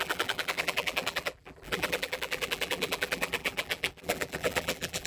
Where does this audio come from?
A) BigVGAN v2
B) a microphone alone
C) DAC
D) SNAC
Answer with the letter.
A